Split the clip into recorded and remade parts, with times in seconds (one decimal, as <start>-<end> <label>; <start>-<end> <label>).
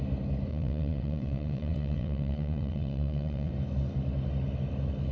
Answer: 0.0-0.5 recorded; 0.5-3.5 remade; 3.5-5.1 recorded